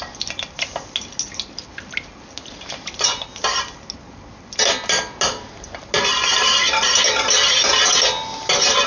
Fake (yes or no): no